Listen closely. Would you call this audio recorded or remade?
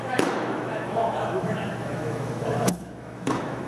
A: remade